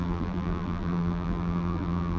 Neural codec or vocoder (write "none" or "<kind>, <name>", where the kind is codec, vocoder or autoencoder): vocoder, BigVGAN v2